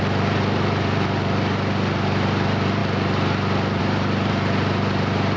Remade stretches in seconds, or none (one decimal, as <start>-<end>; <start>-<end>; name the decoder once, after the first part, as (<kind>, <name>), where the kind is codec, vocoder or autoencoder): 0.0-2.8 (vocoder, BigVGAN v2); 3.8-5.4